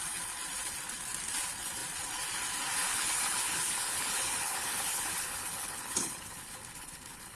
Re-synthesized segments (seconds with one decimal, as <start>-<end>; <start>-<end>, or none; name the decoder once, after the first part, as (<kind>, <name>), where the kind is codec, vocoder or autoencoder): 2.9-7.4 (codec, HILCodec)